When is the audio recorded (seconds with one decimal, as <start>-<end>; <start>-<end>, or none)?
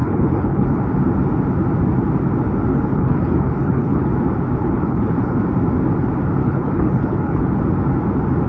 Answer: 0.8-2.7; 4.1-4.6; 5.4-6.4; 7.6-8.5